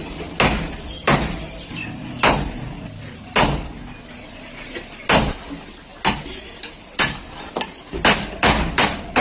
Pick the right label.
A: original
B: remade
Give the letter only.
A